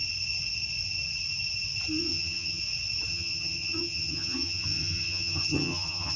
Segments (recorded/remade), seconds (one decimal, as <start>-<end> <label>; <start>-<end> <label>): 0.0-2.0 recorded; 2.0-2.6 remade; 2.6-3.1 recorded; 3.1-6.2 remade

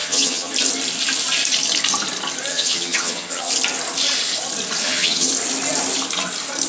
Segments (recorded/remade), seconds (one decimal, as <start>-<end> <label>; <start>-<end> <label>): 0.0-0.5 remade; 0.5-2.5 recorded; 2.5-3.5 remade; 3.5-4.8 recorded; 4.8-5.3 remade; 5.3-6.7 recorded

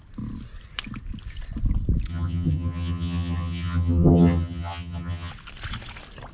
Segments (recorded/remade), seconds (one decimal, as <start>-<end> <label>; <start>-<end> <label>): 0.0-2.1 recorded; 2.1-5.3 remade; 5.3-6.3 recorded

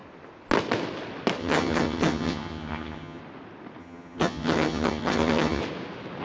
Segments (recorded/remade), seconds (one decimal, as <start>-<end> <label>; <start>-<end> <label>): 0.0-1.4 recorded; 1.4-3.2 remade; 3.2-3.8 recorded; 3.8-5.6 remade; 5.6-6.2 recorded

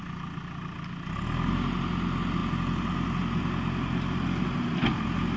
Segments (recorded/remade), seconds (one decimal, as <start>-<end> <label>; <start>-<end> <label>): 0.0-5.4 recorded

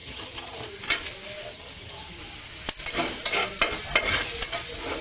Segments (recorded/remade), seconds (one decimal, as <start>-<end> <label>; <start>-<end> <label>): 0.0-0.6 remade; 0.6-1.5 recorded; 1.5-2.2 remade; 2.2-5.0 recorded

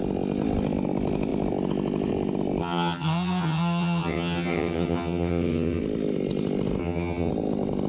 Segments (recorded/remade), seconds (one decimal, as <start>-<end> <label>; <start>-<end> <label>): 0.0-2.6 recorded; 2.6-5.8 remade; 5.8-6.8 recorded; 6.8-7.3 remade; 7.3-7.9 recorded

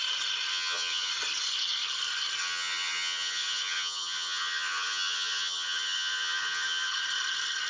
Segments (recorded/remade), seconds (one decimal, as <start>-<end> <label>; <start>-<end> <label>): 0.0-0.5 recorded; 0.5-1.1 remade; 1.1-2.4 recorded; 2.4-6.9 remade; 6.9-7.7 recorded